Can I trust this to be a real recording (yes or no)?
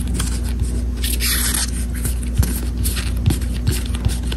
yes